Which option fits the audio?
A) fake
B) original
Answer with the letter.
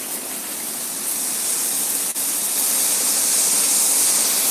B